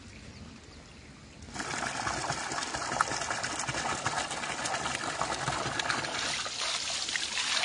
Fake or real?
real